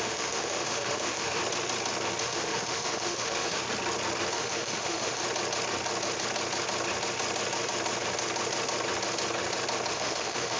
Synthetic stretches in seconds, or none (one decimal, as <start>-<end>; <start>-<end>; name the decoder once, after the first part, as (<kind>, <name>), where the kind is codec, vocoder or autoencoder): 0.0-1.4 (autoencoder, DAC-VAE); 2.2-3.6; 4.3-5.2; 9.9-10.6